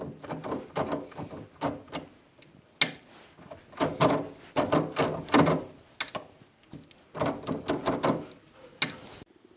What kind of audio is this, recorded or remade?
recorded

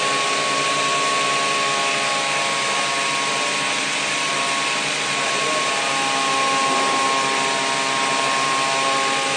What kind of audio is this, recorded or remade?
recorded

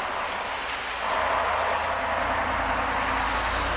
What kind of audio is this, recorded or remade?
recorded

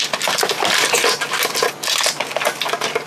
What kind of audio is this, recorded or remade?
recorded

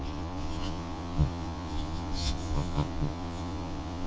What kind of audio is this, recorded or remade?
remade